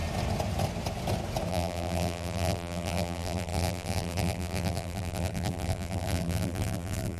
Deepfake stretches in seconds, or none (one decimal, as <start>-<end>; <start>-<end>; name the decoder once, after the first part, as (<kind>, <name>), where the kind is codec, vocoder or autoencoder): 1.5-7.2 (vocoder, BigVGAN v2)